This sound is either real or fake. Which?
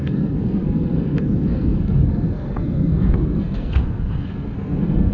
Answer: fake